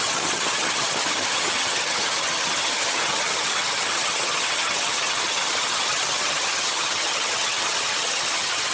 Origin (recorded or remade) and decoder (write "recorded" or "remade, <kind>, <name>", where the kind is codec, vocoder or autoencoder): remade, vocoder, HiFi-GAN